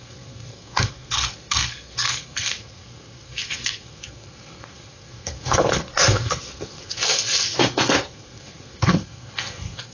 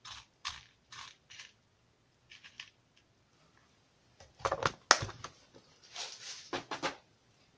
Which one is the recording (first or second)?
second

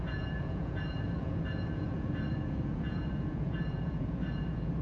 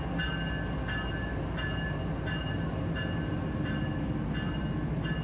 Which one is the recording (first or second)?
second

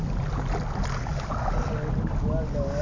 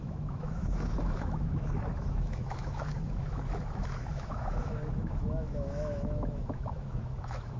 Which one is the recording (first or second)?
first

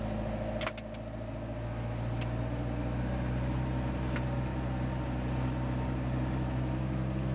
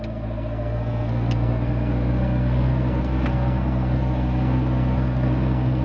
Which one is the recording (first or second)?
first